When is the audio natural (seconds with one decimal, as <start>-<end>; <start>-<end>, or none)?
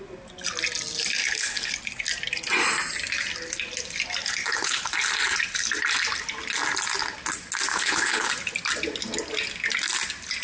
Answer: 0.0-1.2; 1.7-4.2; 4.9-7.7; 8.3-10.4